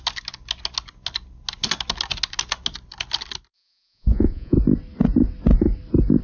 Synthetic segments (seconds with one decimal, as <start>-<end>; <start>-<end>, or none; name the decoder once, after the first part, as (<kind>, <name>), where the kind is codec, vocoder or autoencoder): 3.5-4.6 (vocoder, Vocos)